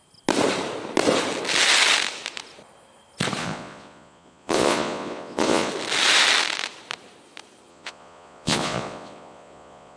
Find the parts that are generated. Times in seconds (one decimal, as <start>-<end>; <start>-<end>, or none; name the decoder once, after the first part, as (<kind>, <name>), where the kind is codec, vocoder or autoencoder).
3.4-5.7 (vocoder, Vocos); 7.7-10.0